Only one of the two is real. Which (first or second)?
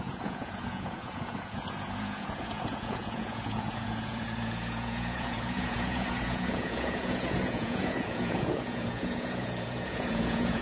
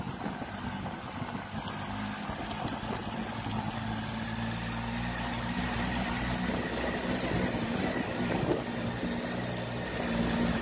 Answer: second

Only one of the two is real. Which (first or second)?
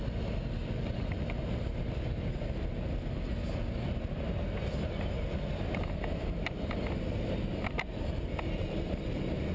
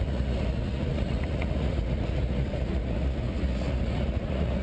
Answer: first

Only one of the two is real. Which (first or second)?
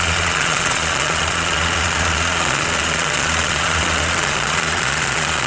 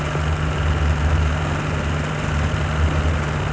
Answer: second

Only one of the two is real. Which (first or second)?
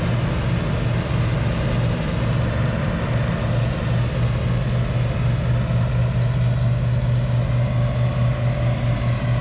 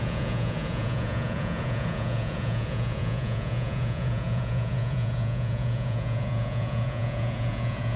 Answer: first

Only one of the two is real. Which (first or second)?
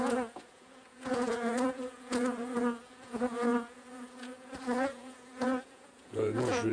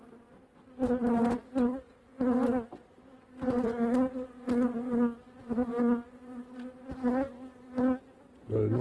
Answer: second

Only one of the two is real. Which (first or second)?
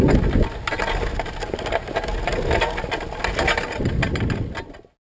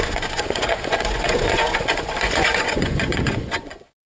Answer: first